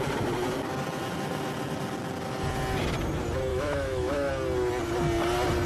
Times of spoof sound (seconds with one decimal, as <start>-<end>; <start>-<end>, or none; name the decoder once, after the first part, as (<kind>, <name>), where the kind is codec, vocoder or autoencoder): 3.5-4.3 (autoencoder, DAC-VAE)